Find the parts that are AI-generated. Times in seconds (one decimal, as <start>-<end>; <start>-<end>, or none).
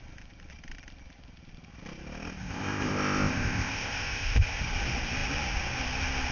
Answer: 2.4-4.6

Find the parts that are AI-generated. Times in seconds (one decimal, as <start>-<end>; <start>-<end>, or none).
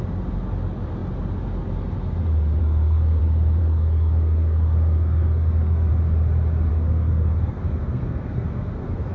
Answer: 2.6-3.2; 3.6-5.9; 6.7-9.1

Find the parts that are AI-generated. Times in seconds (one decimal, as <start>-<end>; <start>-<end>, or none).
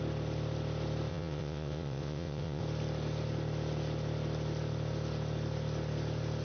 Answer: 1.1-2.6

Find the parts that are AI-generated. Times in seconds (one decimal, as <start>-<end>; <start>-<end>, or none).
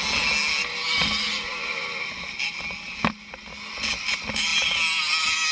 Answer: none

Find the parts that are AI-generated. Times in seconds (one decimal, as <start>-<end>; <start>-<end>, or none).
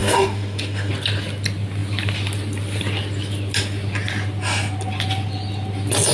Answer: 0.0-0.9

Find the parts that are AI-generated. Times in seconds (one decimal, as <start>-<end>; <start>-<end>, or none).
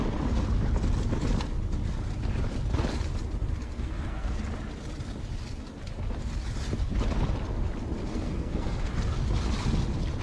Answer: 3.6-4.4; 8.1-8.9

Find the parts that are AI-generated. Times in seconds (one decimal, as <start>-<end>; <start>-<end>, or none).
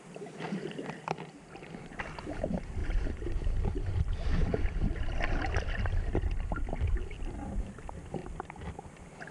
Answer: 0.0-2.8; 7.5-9.3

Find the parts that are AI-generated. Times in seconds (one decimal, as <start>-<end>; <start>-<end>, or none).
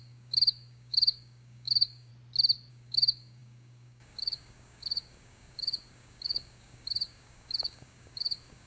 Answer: 0.0-2.1; 2.7-8.7